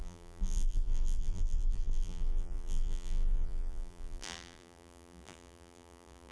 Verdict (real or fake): fake